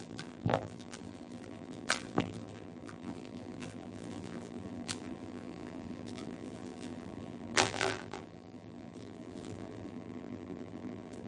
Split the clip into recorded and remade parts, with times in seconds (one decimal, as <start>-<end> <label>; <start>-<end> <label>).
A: 0.0-11.3 remade